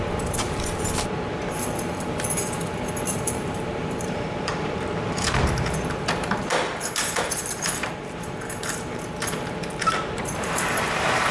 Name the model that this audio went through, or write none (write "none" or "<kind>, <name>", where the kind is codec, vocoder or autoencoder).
vocoder, BigVGAN v2